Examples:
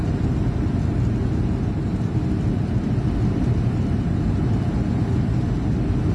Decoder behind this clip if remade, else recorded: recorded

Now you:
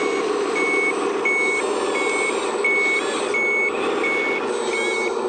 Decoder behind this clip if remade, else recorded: recorded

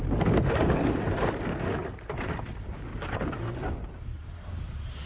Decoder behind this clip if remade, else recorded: recorded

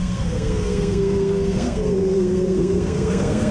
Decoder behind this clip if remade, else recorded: remade, codec, SNAC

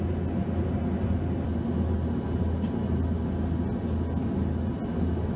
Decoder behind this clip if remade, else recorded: recorded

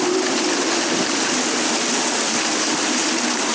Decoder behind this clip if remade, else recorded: recorded